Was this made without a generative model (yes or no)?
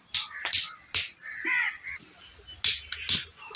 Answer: yes